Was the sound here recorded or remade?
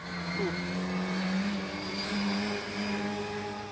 recorded